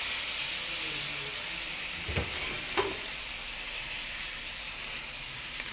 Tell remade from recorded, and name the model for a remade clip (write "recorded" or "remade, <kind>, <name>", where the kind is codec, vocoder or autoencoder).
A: recorded